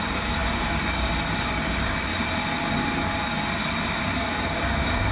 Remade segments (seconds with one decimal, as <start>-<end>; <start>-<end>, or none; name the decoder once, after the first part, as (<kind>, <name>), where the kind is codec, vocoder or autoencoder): 0.0-2.1 (codec, DAC); 4.0-5.1